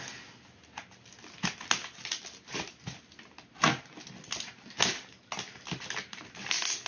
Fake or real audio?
real